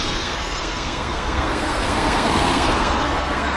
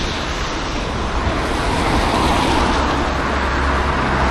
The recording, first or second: second